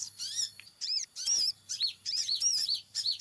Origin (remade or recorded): remade